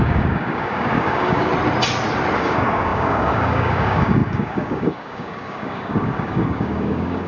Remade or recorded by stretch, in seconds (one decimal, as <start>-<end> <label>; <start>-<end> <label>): 0.0-1.5 remade; 1.5-2.4 recorded; 2.4-7.3 remade